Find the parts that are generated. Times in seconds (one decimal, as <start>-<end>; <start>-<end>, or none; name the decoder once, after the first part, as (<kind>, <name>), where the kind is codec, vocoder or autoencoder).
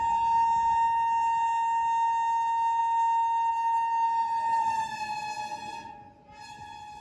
none